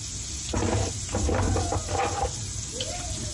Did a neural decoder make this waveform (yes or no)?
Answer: no